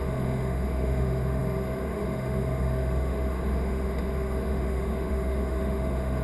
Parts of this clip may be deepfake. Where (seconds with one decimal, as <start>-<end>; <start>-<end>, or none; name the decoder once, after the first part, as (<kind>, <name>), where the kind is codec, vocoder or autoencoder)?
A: 0.0-6.2 (autoencoder, DAC-VAE)